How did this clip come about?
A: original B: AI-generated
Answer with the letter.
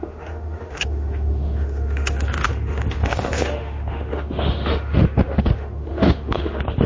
B